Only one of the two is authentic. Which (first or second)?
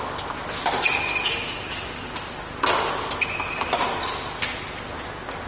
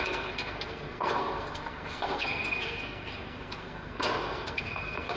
first